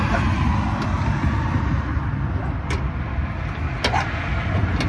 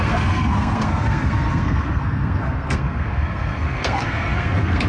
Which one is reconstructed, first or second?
second